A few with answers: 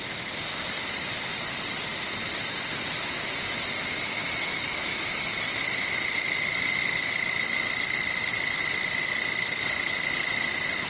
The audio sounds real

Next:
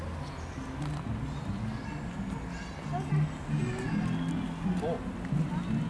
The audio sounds real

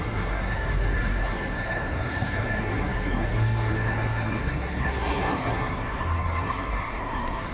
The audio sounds fake